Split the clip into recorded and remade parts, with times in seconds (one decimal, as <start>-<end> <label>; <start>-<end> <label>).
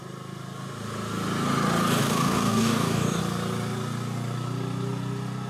0.0-2.0 recorded; 2.0-3.2 remade; 3.2-5.5 recorded